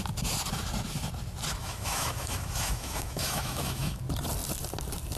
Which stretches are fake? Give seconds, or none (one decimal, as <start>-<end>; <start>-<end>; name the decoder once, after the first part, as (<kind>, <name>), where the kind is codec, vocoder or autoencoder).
1.6-4.0 (autoencoder, DAC-VAE)